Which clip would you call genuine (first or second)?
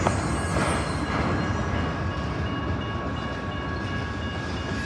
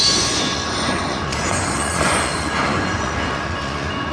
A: first